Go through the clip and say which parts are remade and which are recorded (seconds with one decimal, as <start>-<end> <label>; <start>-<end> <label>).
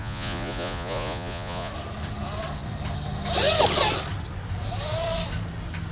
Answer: 0.0-1.7 remade; 1.7-5.9 recorded